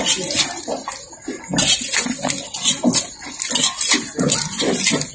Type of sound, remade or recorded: recorded